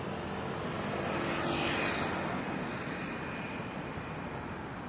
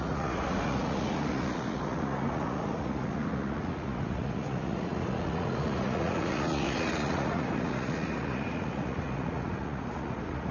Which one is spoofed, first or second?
second